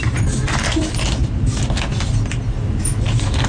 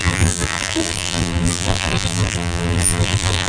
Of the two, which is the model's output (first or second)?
second